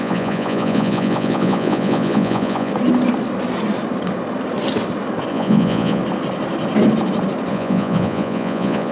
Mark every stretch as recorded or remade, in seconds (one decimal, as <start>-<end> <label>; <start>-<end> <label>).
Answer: 0.0-2.7 remade; 2.7-5.3 recorded; 5.3-6.0 remade; 6.0-7.5 recorded; 7.5-8.9 remade